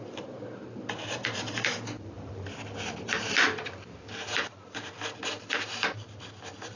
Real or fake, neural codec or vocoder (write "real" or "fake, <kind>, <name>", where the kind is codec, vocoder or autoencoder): fake, vocoder, BigVGAN v2